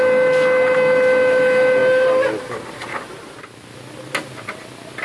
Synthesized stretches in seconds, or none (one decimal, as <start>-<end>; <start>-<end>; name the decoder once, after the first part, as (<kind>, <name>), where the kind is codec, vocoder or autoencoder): none